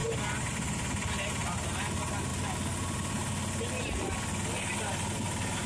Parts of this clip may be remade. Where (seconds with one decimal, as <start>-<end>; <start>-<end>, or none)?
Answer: none